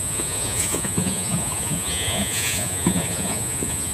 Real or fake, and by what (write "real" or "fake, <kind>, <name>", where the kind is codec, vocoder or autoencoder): fake, vocoder, Vocos